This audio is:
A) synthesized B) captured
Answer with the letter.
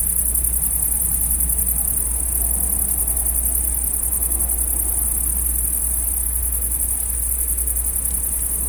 B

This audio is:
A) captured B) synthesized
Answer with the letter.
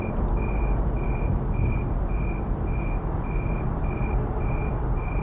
A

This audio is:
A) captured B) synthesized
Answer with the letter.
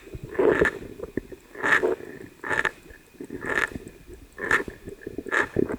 A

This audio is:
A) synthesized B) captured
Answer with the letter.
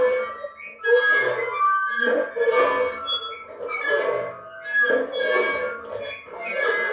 B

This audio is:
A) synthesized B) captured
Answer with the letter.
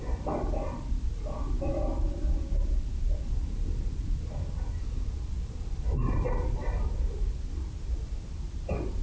B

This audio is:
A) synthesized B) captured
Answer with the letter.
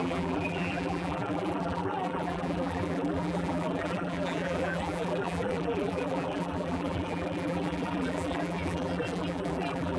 A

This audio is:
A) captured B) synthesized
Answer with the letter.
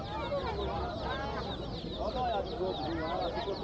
A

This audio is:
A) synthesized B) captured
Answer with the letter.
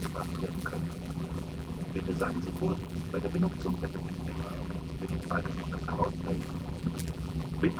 A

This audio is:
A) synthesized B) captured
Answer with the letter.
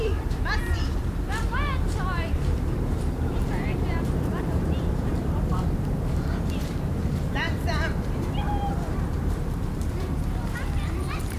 A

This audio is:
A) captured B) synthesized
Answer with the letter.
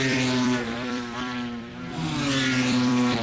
B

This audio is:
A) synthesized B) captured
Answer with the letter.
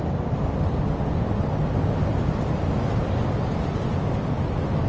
B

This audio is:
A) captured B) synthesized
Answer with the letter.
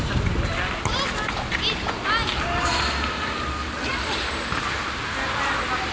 A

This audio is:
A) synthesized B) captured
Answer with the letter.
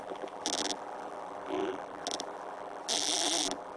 A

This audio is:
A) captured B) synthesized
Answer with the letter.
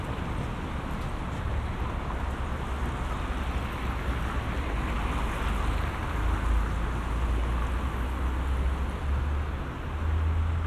A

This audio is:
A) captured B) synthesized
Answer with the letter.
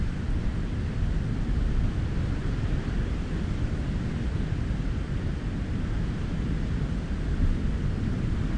A